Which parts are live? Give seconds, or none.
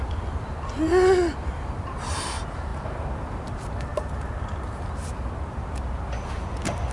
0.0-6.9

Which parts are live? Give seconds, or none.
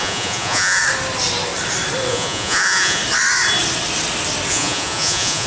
0.8-2.1; 3.0-4.5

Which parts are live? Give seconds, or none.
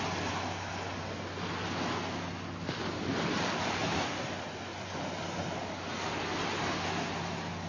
0.0-7.7